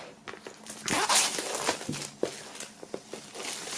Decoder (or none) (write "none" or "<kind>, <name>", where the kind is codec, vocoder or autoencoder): none